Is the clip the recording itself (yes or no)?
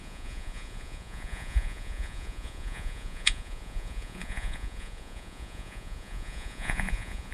no